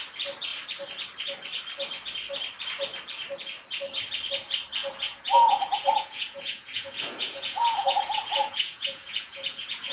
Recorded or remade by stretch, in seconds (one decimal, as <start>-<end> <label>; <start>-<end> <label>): 0.0-4.8 recorded; 4.8-9.9 remade